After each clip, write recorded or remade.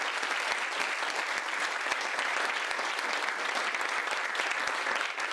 recorded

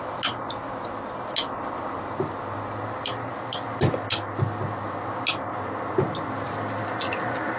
recorded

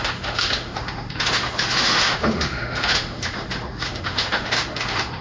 remade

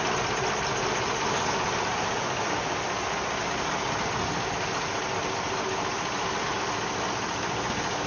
recorded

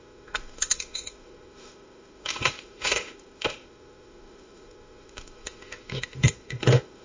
remade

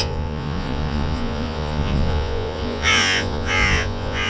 remade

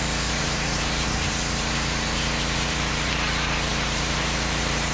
remade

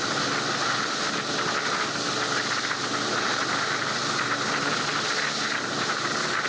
recorded